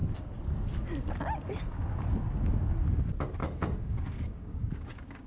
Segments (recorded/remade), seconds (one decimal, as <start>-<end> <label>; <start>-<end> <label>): 0.0-3.4 recorded; 3.4-5.3 remade